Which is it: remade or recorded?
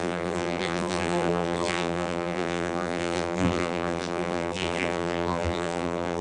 remade